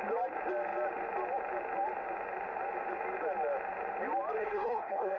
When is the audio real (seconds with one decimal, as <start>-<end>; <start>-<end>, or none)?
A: 0.0-4.4